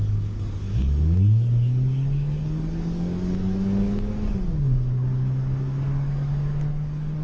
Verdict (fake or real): fake